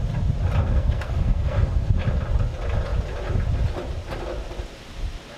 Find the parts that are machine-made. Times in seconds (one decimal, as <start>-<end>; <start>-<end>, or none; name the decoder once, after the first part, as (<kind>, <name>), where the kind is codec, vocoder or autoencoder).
0.6-1.9 (codec, SNAC)